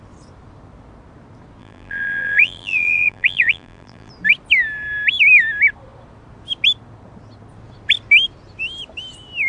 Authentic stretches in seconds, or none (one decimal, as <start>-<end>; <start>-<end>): 0.0-1.6; 4.1-9.5